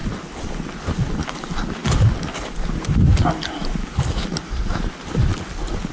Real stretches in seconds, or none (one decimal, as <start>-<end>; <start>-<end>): 0.0-5.9